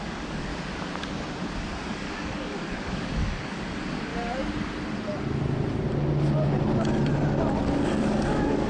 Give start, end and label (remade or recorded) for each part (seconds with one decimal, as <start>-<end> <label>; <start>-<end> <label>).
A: 0.0-0.5 remade; 0.5-1.7 recorded; 1.7-4.1 remade; 4.1-8.0 recorded; 8.0-8.7 remade